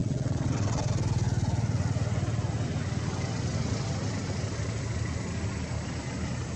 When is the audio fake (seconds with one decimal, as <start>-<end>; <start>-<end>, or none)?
0.0-0.9